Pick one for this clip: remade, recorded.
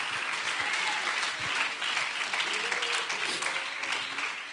recorded